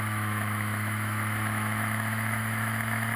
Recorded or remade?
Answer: remade